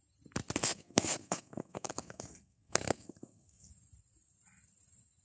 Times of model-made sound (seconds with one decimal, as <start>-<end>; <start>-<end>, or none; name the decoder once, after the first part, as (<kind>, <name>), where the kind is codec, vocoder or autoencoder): 0.6-3.7 (codec, SNAC)